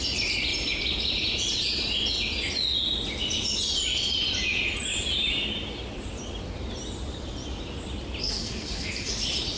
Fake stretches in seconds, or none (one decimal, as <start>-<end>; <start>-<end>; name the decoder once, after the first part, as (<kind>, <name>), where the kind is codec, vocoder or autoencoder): 8.2-9.1 (codec, SNAC)